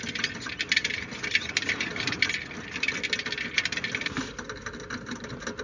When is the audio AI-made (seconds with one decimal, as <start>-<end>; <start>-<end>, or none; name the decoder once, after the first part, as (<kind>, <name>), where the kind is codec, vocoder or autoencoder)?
none